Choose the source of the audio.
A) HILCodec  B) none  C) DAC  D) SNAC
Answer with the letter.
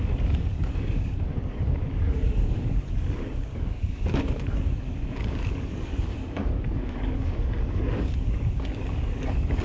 C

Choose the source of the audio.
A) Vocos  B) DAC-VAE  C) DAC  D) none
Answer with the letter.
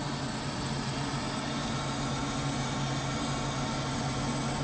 D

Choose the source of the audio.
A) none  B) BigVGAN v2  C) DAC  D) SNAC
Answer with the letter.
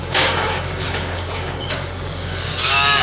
C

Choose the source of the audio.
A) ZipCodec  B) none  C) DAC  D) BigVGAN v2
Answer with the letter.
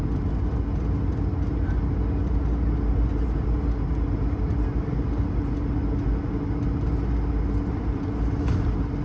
B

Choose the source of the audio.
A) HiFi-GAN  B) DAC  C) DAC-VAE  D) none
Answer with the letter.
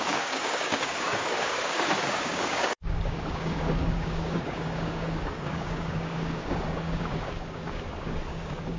B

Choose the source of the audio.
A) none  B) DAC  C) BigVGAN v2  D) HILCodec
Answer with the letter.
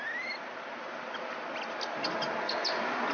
A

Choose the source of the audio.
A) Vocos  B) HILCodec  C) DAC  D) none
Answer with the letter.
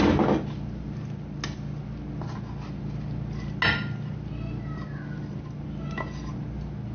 D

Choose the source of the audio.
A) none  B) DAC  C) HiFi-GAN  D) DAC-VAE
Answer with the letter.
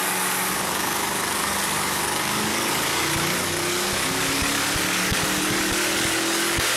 B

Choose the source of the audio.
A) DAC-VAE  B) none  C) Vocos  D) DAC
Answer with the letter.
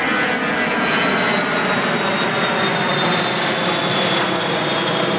B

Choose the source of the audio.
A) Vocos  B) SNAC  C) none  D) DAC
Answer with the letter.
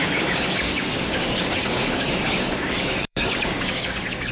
D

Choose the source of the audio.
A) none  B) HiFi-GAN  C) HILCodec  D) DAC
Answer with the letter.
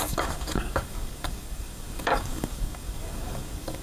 D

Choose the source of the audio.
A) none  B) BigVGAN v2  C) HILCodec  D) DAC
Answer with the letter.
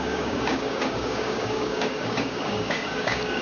D